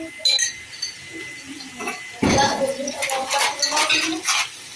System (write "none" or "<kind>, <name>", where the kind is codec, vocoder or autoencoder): none